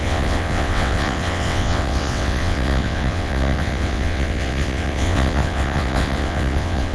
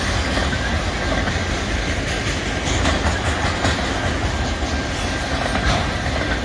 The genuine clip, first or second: second